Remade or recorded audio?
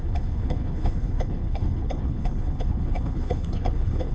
remade